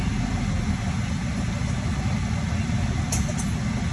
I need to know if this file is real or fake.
real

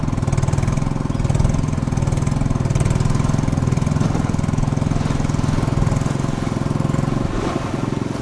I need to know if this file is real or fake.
real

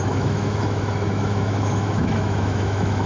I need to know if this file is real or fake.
fake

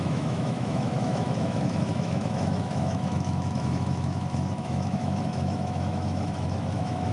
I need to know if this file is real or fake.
fake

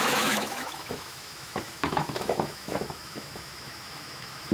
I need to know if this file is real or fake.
fake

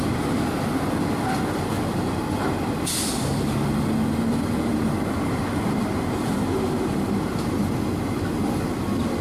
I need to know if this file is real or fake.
real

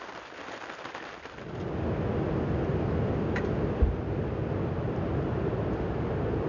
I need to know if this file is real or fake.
real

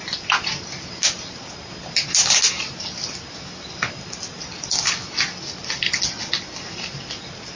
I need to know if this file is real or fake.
real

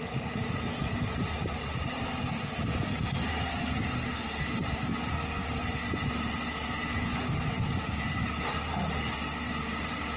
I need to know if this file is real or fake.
real